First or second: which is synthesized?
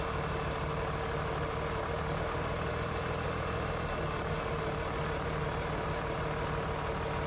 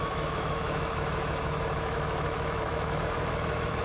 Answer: second